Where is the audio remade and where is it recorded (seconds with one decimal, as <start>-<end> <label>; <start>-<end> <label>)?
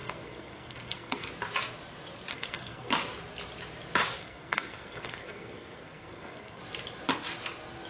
0.0-1.3 remade; 1.3-2.3 recorded; 2.3-2.9 remade; 2.9-4.2 recorded; 4.2-6.6 remade; 6.6-7.9 recorded